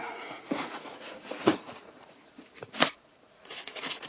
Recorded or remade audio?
remade